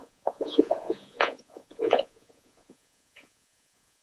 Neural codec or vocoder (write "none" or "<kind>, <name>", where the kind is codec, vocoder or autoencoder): vocoder, Vocos